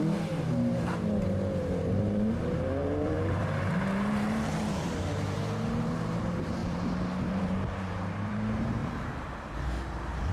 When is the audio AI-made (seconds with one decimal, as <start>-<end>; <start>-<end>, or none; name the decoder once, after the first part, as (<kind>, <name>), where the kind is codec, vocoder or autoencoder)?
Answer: 0.0-6.6 (vocoder, BigVGAN v2); 7.3-10.3